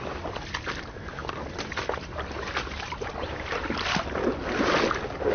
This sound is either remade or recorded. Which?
recorded